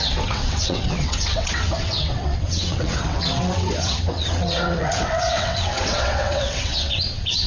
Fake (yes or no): yes